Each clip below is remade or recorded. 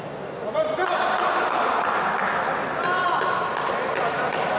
recorded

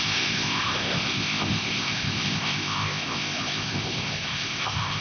remade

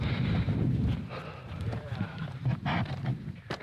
remade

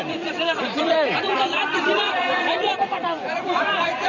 remade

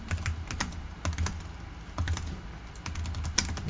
recorded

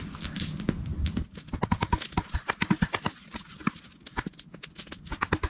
recorded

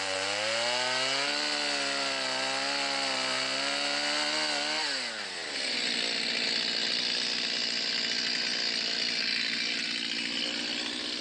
recorded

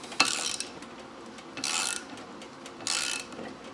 recorded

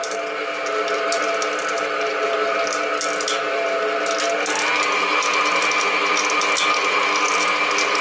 recorded